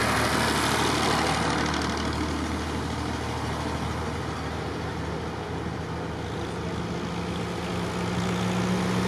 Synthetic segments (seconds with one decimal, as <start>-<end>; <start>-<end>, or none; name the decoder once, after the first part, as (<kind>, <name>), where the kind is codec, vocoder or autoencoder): none